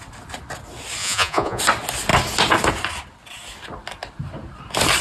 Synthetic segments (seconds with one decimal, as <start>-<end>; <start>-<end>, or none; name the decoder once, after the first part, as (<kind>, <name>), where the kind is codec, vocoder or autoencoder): 1.0-1.6 (vocoder, Vocos)